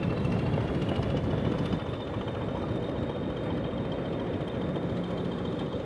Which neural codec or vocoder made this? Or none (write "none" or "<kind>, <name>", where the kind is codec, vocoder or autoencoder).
none